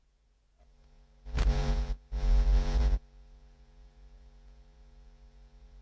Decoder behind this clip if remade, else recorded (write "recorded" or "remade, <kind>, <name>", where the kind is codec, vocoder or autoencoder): remade, vocoder, Vocos